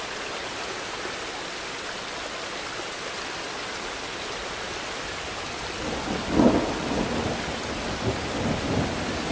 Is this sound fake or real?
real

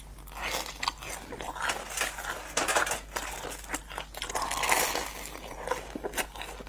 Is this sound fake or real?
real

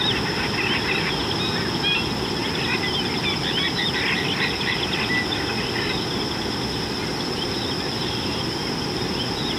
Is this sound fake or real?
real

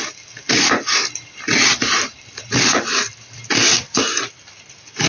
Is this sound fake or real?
real